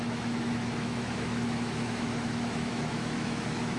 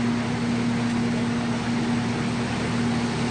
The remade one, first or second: first